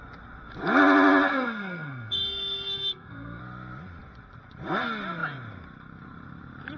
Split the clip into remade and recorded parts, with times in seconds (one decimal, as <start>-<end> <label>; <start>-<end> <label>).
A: 0.0-1.3 recorded; 1.3-3.4 remade; 3.4-6.8 recorded